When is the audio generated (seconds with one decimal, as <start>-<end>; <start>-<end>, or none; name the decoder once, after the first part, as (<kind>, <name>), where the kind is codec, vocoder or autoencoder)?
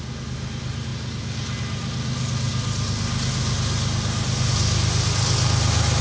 none